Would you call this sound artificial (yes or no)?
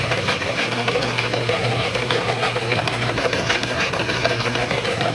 yes